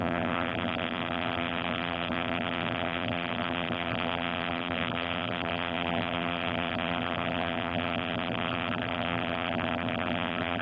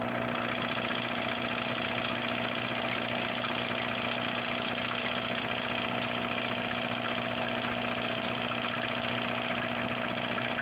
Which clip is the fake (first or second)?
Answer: first